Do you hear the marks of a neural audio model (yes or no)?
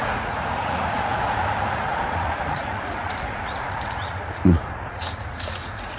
yes